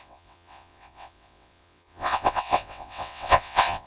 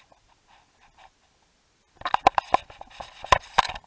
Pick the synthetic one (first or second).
first